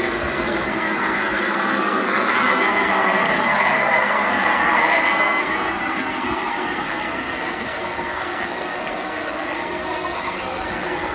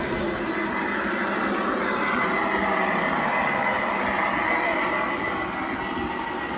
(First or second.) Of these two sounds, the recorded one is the second